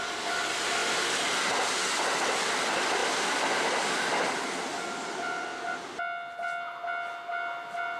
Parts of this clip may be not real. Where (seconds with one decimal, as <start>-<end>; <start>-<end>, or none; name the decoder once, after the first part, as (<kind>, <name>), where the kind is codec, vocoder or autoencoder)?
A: 0.8-1.5 (vocoder, BigVGAN v2); 3.0-4.4